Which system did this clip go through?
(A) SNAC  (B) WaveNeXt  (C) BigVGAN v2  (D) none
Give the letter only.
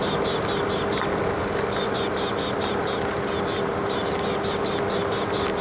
D